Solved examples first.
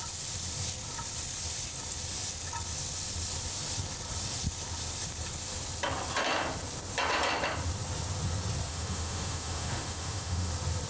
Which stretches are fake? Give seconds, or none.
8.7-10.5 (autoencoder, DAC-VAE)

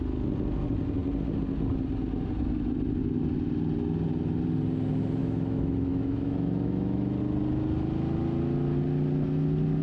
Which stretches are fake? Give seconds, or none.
5.2-7.2 (autoencoder, DAC-VAE)

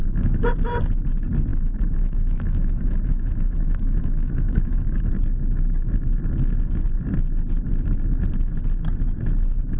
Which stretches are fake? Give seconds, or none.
0.0-0.5 (autoencoder, DAC-VAE); 1.5-5.1